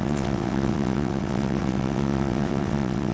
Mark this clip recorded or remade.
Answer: remade